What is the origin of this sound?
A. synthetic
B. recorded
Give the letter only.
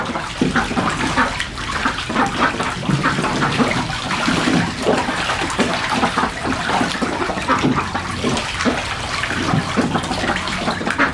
B